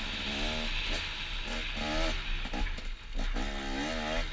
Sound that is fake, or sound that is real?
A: real